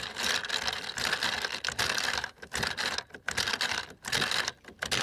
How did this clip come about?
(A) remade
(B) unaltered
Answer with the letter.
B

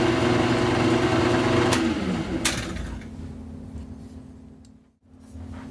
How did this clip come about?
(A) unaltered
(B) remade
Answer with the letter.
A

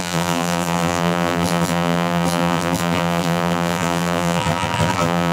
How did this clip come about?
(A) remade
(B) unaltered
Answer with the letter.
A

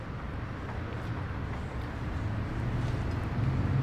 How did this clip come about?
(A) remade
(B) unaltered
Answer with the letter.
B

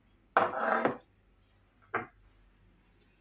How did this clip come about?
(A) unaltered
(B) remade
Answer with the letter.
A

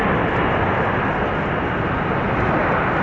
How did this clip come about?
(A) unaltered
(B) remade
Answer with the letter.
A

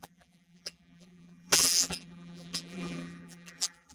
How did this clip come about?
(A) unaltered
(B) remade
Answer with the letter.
B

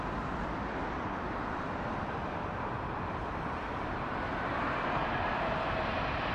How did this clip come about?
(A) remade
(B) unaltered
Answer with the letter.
A